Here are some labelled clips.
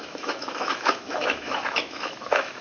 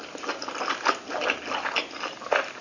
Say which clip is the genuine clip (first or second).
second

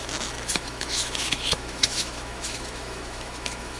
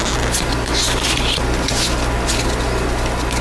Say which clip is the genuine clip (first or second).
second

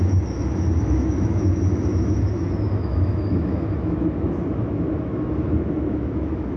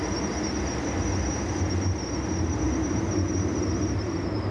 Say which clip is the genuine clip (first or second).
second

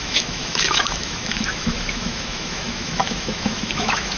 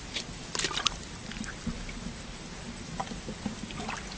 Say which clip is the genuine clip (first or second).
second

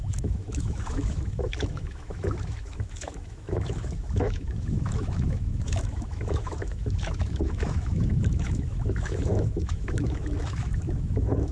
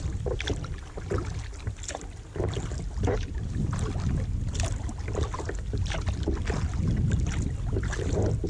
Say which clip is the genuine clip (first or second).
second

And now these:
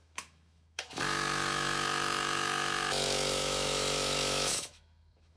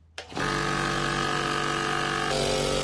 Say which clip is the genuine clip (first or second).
second